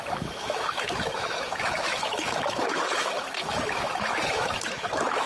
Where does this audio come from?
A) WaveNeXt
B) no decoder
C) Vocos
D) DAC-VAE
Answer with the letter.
D